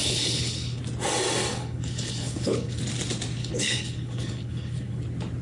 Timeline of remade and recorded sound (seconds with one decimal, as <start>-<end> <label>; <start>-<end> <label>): 0.0-0.8 remade; 0.8-1.5 recorded; 1.5-2.8 remade; 2.8-3.4 recorded; 3.4-5.0 remade; 5.0-5.4 recorded